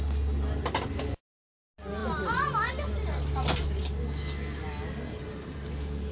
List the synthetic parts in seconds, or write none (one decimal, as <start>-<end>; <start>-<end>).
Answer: none